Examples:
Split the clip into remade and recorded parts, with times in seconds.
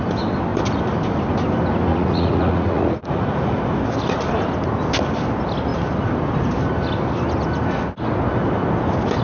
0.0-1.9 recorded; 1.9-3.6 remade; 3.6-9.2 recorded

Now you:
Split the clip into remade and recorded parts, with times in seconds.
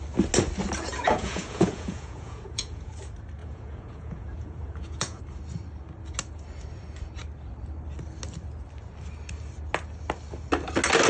0.0-0.9 recorded; 0.9-2.9 remade; 2.9-3.4 recorded; 3.4-5.2 remade; 5.2-11.1 recorded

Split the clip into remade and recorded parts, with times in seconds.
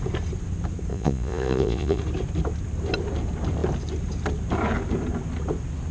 0.0-0.9 recorded; 0.9-2.0 remade; 2.0-5.9 recorded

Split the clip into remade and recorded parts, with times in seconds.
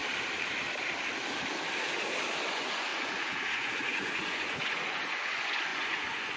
0.0-2.5 recorded; 2.5-6.4 remade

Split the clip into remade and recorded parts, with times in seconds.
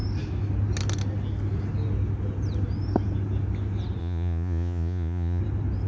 0.0-4.0 recorded; 4.0-5.4 remade; 5.4-5.9 recorded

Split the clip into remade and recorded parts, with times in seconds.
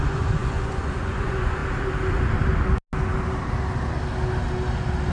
0.0-1.6 remade; 1.6-5.1 recorded